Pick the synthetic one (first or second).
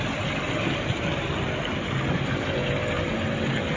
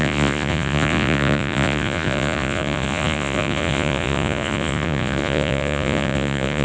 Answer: second